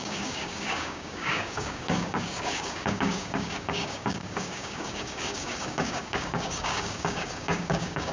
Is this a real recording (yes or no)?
no